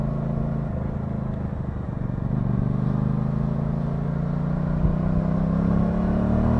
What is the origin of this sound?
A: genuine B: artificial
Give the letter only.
A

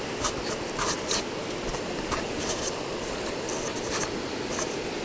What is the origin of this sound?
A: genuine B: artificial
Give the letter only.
A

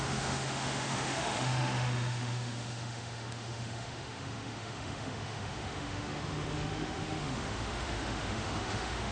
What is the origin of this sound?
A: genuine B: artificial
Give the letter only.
B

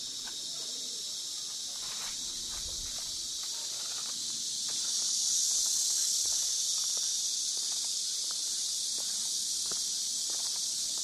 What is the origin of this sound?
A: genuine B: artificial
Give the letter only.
A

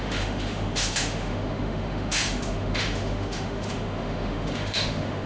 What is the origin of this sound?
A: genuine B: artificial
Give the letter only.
B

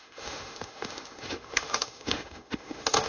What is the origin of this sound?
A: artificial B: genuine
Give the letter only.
A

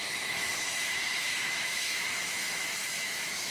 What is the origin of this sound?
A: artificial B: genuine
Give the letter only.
A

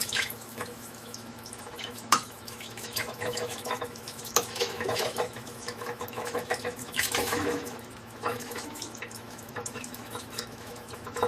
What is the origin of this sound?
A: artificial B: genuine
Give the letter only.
A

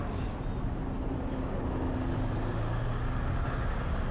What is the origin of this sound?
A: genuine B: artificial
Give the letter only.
A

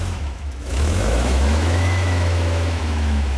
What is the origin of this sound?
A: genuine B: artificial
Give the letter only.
B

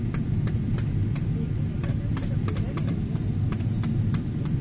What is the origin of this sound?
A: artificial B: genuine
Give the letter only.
B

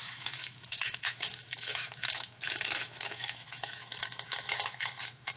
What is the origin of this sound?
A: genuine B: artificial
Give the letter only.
B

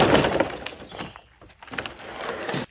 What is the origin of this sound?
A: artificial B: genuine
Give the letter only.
B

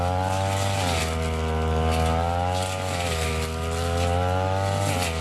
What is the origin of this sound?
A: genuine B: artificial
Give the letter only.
A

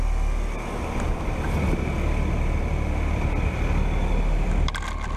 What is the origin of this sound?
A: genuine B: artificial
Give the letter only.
A